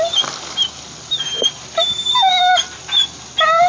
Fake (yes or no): no